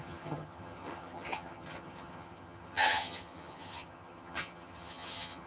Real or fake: fake